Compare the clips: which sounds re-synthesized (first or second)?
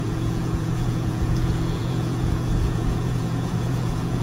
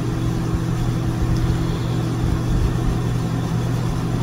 first